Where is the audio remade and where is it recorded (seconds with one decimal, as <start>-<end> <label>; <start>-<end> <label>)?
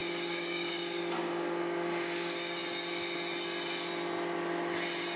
0.0-2.6 remade; 2.6-5.2 recorded